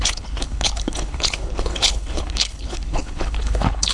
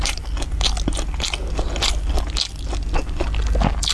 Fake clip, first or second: first